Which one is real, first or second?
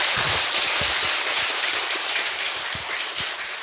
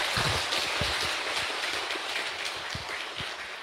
second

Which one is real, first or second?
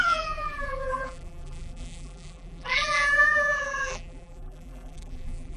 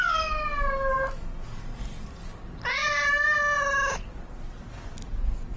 second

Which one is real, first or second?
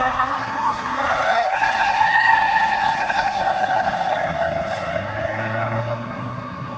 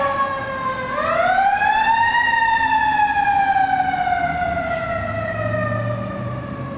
second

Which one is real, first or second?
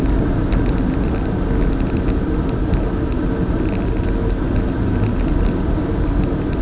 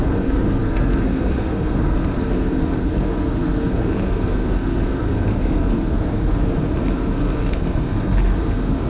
first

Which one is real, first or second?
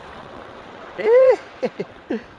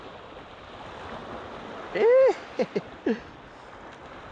second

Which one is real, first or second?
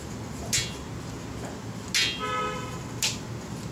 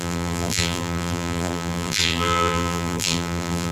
first